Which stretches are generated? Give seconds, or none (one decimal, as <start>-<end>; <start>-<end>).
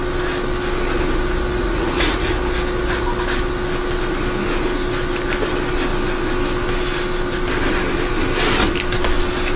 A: 1.6-2.3